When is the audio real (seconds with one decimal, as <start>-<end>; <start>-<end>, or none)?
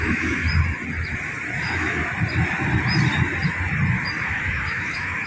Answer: 0.4-1.6; 2.0-4.2